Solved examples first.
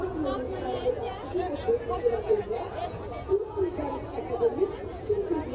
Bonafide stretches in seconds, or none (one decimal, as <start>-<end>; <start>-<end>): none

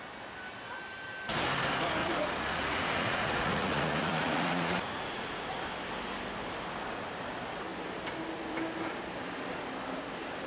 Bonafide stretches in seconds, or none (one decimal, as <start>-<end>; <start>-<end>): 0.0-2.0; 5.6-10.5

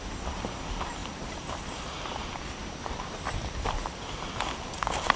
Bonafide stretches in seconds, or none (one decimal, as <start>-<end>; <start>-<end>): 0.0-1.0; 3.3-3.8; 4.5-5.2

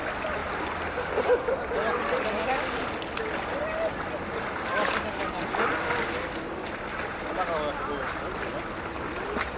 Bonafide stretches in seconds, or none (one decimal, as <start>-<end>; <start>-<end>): 0.0-9.6

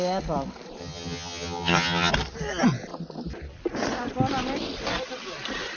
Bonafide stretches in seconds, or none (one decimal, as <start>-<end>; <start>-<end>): 0.0-0.8; 2.1-5.8

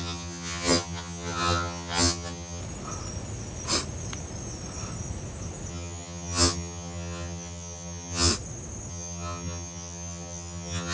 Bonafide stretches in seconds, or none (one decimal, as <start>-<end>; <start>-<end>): 2.6-5.7; 8.3-8.9